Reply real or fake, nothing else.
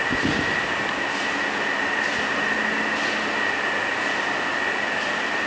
real